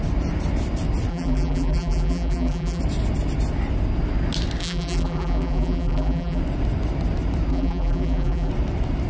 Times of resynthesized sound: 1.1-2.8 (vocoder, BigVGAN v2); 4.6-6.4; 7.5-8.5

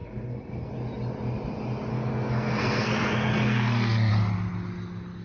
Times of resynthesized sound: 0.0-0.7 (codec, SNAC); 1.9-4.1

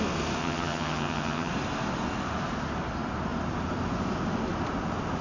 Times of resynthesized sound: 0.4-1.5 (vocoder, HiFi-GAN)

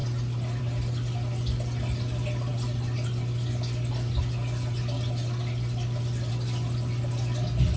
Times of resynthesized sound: none

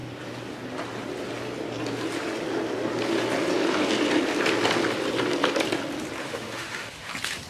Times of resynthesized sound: 6.2-7.1 (autoencoder, DAC-VAE)